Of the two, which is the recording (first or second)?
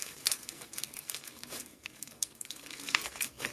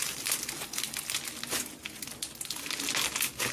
second